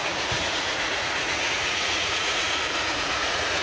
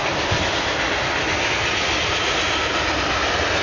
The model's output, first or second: first